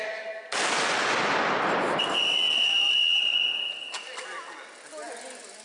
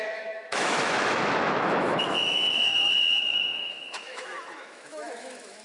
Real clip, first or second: first